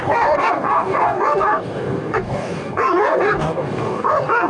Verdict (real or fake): fake